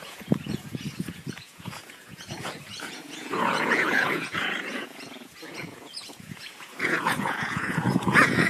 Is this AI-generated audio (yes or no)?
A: yes